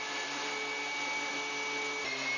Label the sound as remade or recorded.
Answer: recorded